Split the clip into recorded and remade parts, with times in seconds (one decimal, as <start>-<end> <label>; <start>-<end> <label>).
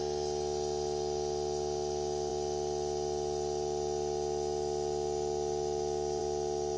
0.0-6.8 recorded